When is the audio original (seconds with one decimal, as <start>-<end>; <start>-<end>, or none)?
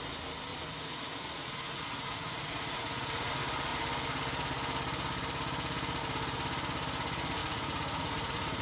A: 0.0-0.5; 3.3-7.4